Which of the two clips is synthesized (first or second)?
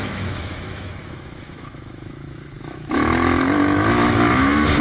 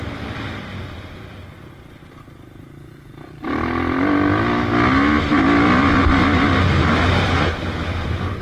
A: first